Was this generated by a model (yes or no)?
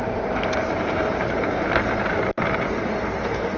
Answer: yes